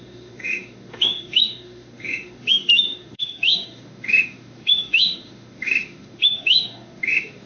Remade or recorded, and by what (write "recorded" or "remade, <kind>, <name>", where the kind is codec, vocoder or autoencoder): remade, autoencoder, DAC-VAE